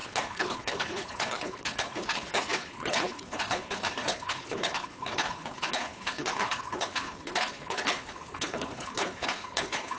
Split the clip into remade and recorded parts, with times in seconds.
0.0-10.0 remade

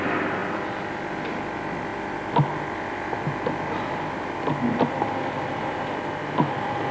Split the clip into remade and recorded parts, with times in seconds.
0.0-6.9 recorded

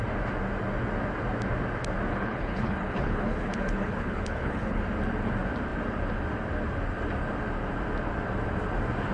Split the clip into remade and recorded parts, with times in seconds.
0.0-2.1 recorded; 2.1-4.8 remade; 4.8-9.1 recorded

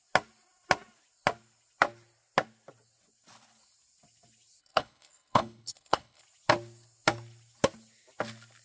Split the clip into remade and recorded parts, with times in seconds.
0.0-4.6 recorded; 4.6-6.2 remade; 6.2-8.6 recorded

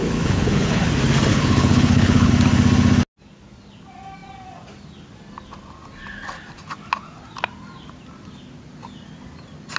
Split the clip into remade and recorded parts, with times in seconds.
0.0-0.9 remade; 0.9-1.3 recorded; 1.3-2.3 remade; 2.3-9.8 recorded

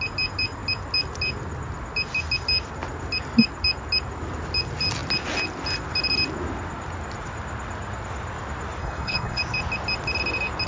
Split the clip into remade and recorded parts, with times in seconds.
0.0-8.8 recorded; 8.8-9.4 remade; 9.4-10.7 recorded